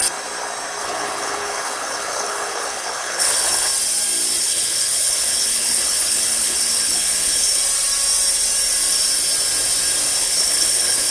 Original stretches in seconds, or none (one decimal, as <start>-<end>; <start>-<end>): 0.0-0.8; 3.7-4.4; 7.6-10.2